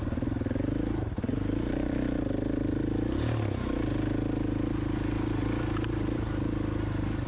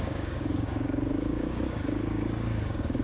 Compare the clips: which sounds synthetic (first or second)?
second